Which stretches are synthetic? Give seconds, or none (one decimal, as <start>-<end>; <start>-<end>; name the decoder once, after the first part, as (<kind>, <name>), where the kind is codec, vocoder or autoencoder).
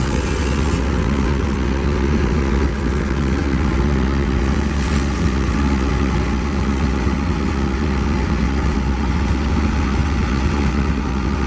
0.0-11.5 (vocoder, WaveNeXt)